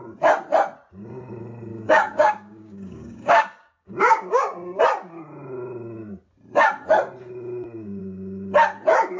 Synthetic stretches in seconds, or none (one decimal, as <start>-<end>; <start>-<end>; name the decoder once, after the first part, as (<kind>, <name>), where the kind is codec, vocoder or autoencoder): 1.7-4.8 (codec, DAC)